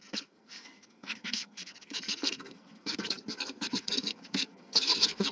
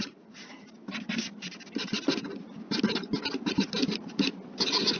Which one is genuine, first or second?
second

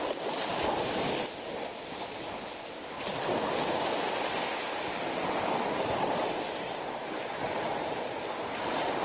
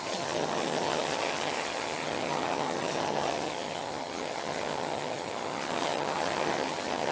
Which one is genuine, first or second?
first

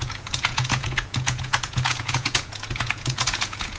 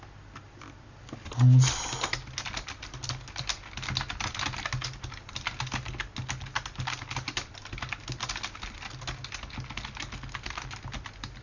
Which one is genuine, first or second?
second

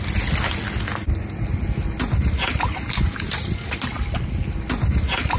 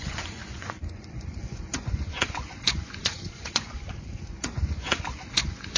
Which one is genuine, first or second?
first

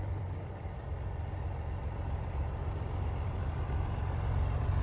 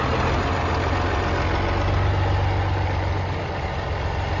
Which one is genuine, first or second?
second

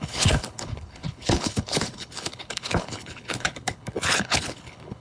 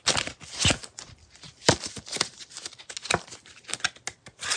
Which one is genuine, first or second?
second